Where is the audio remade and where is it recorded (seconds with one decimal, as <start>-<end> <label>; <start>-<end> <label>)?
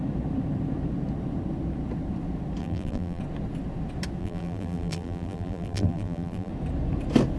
0.0-2.6 recorded; 2.6-3.2 remade; 3.2-4.2 recorded; 4.2-6.5 remade; 6.5-7.4 recorded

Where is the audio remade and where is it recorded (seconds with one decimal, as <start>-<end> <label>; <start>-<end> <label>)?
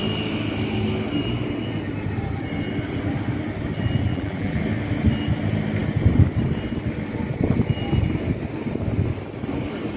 0.0-4.1 recorded; 4.1-4.6 remade; 4.6-10.0 recorded